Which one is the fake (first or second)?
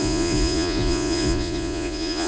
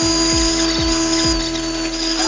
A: first